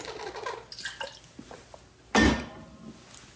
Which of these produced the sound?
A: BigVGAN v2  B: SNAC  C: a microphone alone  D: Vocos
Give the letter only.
C